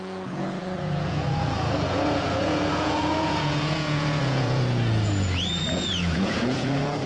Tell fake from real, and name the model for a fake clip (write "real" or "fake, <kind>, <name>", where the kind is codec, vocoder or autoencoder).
fake, vocoder, Vocos